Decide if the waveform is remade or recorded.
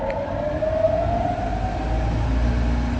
recorded